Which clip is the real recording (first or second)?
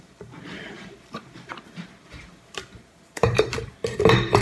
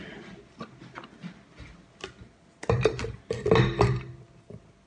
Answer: second